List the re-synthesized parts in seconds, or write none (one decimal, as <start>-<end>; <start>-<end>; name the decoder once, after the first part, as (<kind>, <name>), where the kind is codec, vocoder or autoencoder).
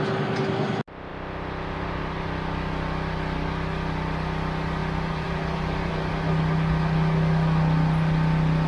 4.8-5.9 (vocoder, BigVGAN v2)